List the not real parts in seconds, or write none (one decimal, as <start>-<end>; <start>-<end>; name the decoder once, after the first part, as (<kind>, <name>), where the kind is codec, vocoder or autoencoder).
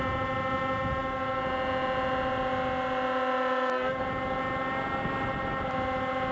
none